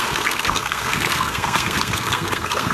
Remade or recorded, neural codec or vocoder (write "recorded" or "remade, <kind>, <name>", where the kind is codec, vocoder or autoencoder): remade, codec, SNAC